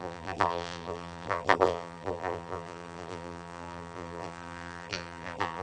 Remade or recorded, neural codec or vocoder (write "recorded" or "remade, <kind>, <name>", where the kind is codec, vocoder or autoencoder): remade, vocoder, BigVGAN v2